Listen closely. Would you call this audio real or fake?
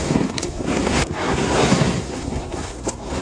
fake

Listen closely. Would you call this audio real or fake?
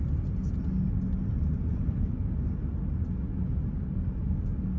real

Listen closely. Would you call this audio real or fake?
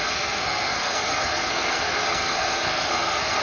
fake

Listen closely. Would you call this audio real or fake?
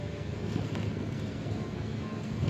fake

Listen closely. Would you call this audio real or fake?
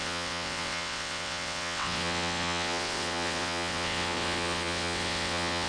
fake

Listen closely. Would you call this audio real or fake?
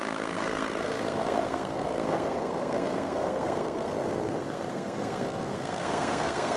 fake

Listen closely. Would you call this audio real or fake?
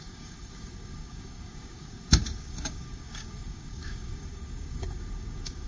fake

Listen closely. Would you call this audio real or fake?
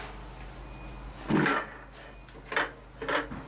real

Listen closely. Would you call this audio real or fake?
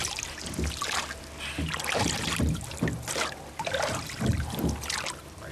real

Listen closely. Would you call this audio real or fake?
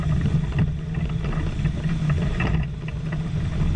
real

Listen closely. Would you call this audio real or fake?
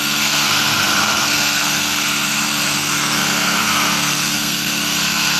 fake